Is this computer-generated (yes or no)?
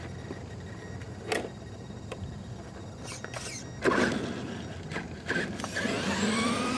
no